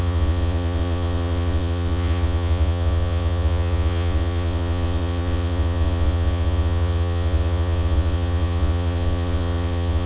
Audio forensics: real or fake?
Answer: fake